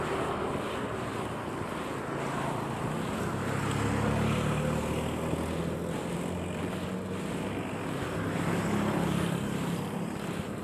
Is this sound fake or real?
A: real